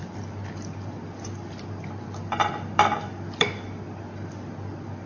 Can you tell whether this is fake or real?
fake